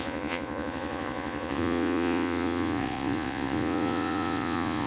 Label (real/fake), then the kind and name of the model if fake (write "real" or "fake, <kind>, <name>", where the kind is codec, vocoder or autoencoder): fake, vocoder, Vocos